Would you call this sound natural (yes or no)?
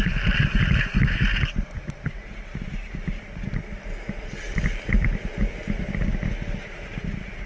yes